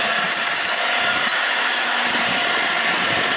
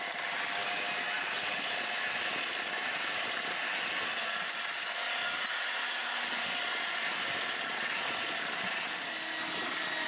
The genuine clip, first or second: second